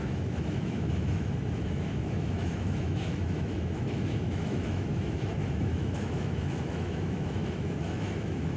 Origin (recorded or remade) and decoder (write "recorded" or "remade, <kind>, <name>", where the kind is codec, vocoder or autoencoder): remade, autoencoder, DAC-VAE